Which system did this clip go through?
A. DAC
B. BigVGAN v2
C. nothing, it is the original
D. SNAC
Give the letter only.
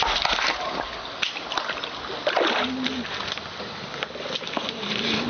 C